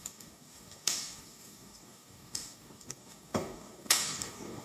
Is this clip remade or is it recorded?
remade